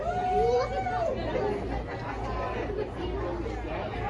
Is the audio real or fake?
real